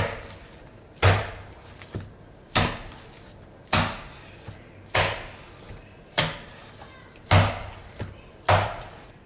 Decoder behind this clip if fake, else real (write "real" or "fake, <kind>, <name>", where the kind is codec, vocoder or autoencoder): real